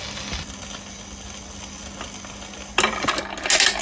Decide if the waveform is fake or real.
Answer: real